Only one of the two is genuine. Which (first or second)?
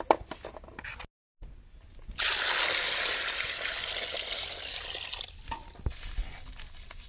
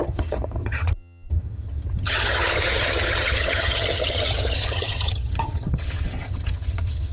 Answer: first